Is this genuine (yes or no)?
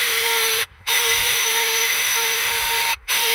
no